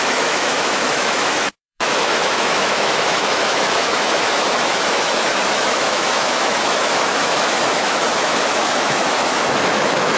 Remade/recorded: remade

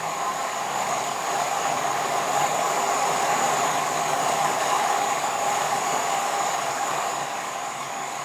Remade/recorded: remade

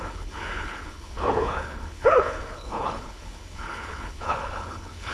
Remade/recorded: remade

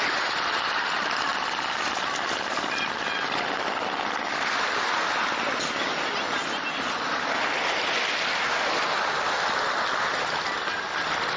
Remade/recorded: recorded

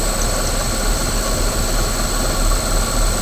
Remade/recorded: recorded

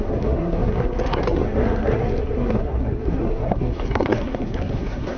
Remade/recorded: remade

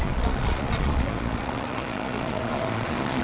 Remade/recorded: remade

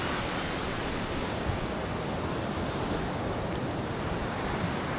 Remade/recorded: recorded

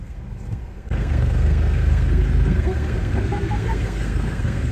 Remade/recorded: remade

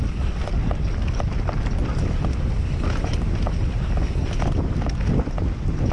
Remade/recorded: recorded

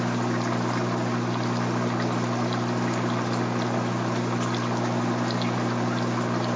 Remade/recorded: recorded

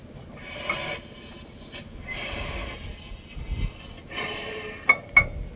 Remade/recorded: recorded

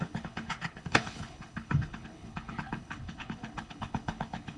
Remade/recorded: remade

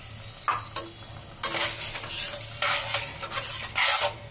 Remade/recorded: recorded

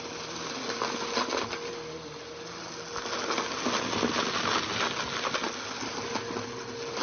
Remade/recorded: recorded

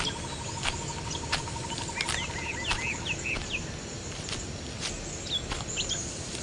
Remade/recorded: recorded